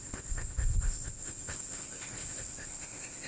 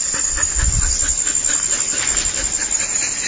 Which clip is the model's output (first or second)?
first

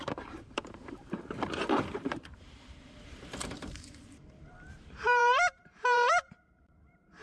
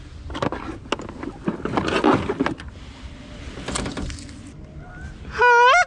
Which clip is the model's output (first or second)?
first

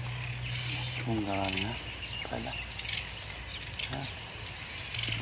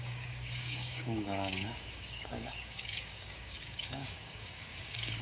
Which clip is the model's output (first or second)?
second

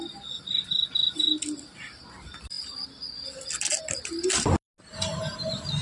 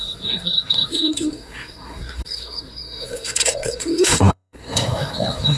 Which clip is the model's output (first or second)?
second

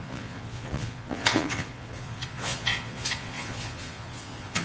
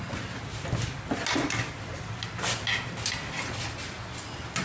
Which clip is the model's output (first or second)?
first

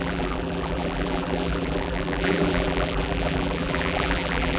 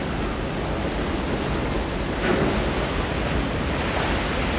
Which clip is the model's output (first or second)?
first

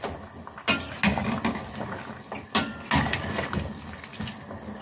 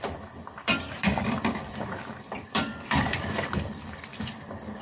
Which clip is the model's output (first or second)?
second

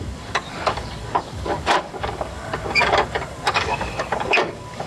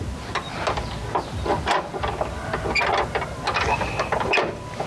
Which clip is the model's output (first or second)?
first